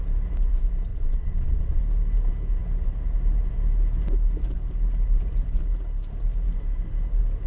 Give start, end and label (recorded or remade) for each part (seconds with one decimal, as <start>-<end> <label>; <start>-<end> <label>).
0.0-0.9 recorded; 0.9-1.8 remade; 1.8-7.5 recorded